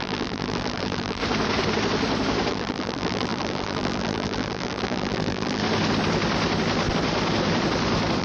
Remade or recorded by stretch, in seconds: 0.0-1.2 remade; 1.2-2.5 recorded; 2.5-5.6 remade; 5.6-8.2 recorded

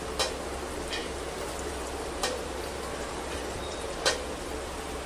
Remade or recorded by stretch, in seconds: 0.0-1.0 recorded; 1.0-4.1 remade; 4.1-5.1 recorded

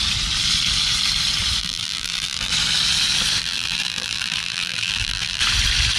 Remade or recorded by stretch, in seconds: 0.0-1.6 recorded; 1.6-2.5 remade; 2.5-3.4 recorded; 3.4-5.4 remade; 5.4-6.0 recorded

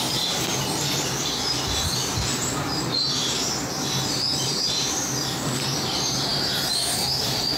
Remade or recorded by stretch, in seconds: 0.0-3.2 remade; 3.2-3.7 recorded; 3.7-7.6 remade

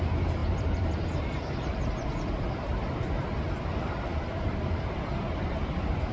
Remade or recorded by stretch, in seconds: 0.0-0.4 recorded; 0.4-1.9 remade; 1.9-4.1 recorded; 4.1-6.1 remade

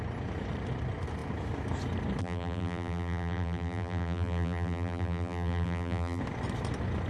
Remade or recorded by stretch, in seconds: 0.0-2.2 recorded; 2.2-6.2 remade; 6.2-7.1 recorded

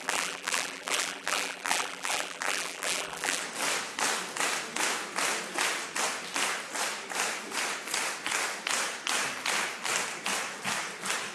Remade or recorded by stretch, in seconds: 0.0-3.4 remade; 3.4-11.3 recorded